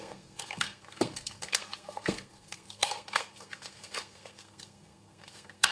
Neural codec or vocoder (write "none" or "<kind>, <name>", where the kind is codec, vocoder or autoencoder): codec, SNAC